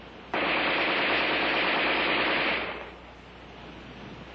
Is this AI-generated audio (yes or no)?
no